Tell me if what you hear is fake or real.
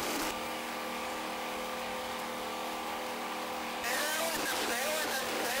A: fake